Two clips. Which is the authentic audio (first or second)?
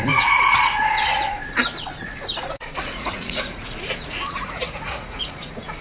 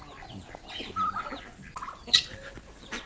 second